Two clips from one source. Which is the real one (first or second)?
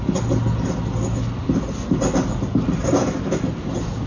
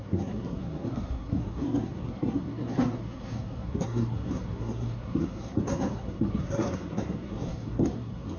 first